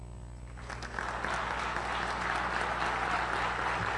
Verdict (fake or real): real